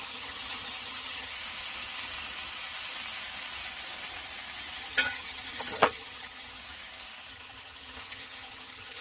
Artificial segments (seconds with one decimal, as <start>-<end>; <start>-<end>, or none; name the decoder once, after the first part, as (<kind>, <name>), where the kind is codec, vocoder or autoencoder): 0.0-1.3 (vocoder, HiFi-GAN); 4.8-6.6; 7.3-9.0